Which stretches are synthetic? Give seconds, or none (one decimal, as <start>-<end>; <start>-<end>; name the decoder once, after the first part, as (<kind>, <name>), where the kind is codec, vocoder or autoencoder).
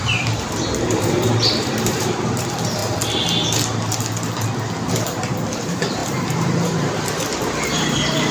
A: 0.0-2.8 (vocoder, BigVGAN v2); 4.9-8.3